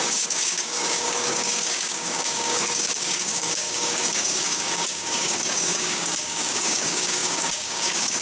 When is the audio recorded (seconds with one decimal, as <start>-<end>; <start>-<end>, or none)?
none